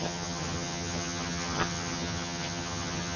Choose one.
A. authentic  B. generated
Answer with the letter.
B